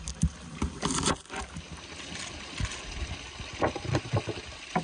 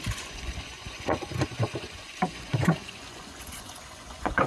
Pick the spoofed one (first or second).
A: second